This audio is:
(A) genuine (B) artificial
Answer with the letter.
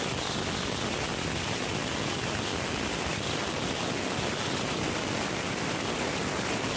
A